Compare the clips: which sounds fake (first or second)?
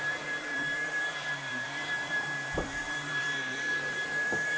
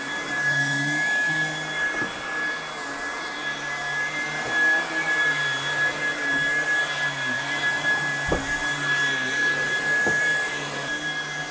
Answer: first